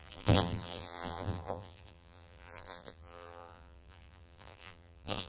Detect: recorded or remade remade